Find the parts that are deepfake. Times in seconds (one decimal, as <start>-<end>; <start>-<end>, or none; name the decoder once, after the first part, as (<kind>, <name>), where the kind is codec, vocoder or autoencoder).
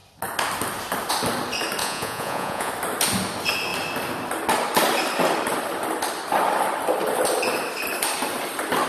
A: 1.8-2.7 (vocoder, Vocos)